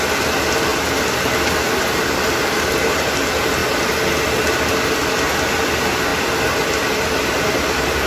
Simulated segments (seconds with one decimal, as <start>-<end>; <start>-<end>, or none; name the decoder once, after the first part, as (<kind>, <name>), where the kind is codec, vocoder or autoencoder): none